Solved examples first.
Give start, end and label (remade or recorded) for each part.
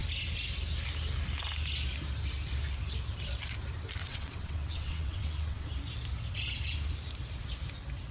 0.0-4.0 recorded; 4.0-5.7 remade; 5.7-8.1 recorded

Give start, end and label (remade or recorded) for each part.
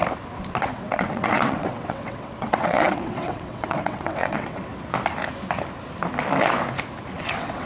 0.0-0.6 recorded; 0.6-4.7 remade; 4.7-7.2 recorded; 7.2-7.7 remade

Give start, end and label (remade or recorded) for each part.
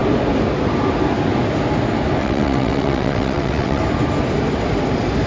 0.0-2.2 recorded; 2.2-3.8 remade; 3.8-5.3 recorded